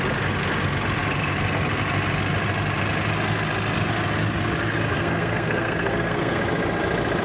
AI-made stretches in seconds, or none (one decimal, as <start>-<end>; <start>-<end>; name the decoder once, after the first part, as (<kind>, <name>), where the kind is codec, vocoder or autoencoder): 4.9-6.4 (codec, SNAC)